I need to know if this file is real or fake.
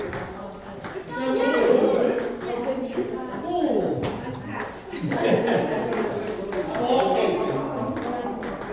real